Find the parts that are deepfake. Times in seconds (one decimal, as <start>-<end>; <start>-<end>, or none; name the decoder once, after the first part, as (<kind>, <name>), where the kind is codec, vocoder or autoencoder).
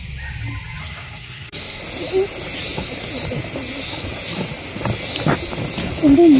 0.8-1.8 (codec, SNAC)